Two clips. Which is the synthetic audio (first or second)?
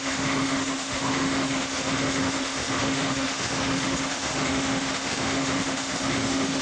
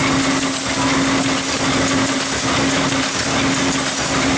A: first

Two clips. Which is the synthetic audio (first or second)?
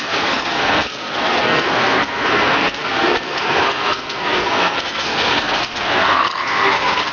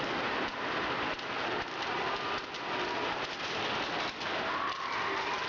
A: first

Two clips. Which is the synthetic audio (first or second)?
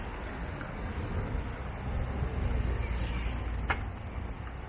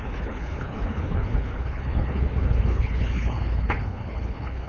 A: second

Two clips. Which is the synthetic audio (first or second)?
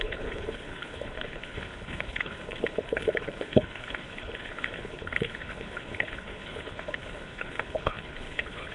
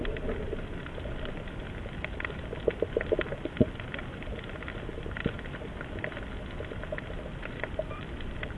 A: first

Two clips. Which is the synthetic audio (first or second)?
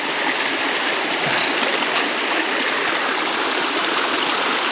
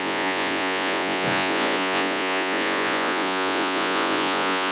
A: second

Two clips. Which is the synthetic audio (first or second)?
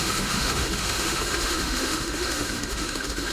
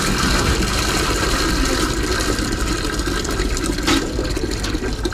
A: first